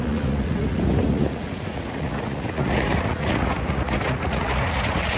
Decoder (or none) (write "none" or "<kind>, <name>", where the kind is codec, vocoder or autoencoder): vocoder, Vocos